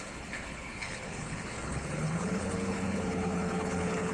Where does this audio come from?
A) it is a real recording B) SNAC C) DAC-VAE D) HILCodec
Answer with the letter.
D